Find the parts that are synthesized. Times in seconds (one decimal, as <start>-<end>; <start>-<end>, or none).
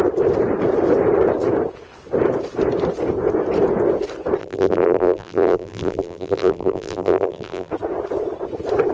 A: 4.4-7.7